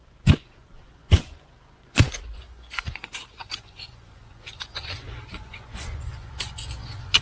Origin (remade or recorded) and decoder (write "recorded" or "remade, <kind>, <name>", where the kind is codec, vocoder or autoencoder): remade, vocoder, Vocos